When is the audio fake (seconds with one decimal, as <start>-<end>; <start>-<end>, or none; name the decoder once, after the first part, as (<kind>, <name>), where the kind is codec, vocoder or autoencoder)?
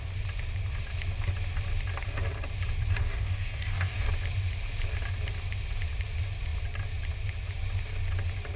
3.0-4.1 (codec, DAC)